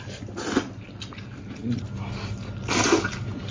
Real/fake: real